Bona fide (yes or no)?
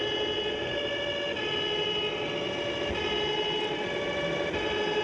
yes